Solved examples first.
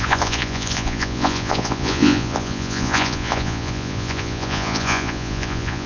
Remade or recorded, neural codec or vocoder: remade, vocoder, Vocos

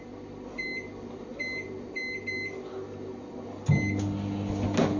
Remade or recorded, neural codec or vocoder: recorded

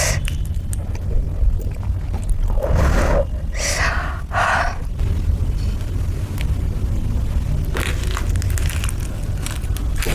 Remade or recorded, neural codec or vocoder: recorded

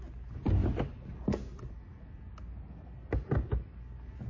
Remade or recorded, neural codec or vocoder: recorded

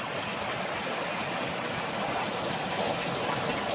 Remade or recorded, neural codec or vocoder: recorded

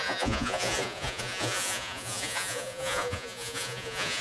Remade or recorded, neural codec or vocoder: remade, vocoder, Vocos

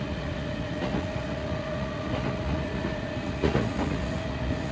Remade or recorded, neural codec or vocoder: remade, vocoder, Vocos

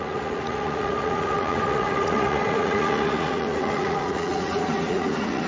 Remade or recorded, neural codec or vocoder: remade, vocoder, Vocos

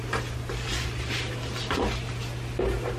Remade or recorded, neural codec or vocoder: recorded